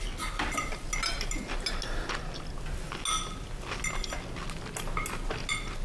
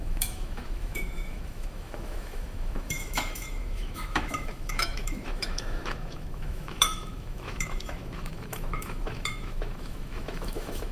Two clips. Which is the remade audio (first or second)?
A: second